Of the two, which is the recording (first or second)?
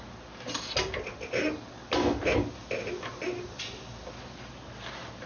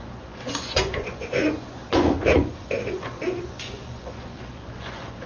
first